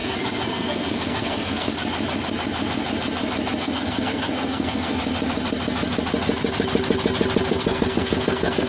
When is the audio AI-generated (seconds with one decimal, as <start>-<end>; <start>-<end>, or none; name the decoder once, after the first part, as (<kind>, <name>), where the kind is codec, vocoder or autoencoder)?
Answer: 0.0-1.7 (codec, SNAC); 3.6-5.0; 7.5-8.7